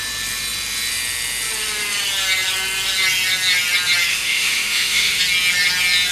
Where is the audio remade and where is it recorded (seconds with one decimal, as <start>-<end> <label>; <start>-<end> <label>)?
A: 0.0-4.1 recorded; 4.1-5.2 remade; 5.2-6.1 recorded